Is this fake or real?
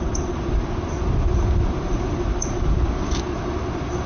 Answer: real